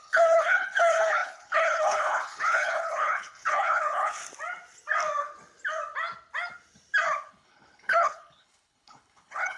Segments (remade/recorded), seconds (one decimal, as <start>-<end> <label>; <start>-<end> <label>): 0.0-4.2 remade; 4.2-7.3 recorded; 7.3-9.6 remade